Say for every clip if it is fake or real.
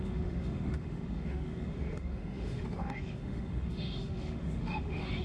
fake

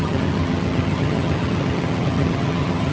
fake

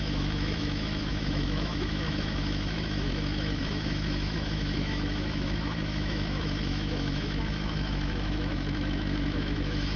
fake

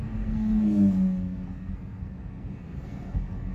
fake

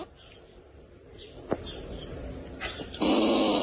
real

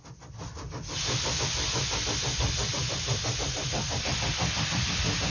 real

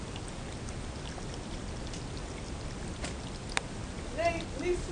real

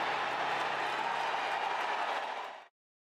real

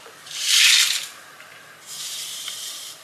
fake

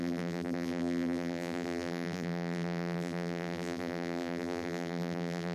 fake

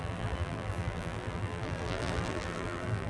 fake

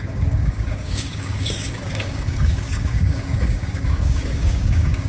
fake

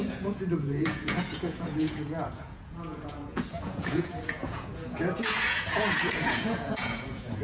fake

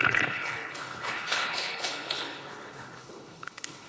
fake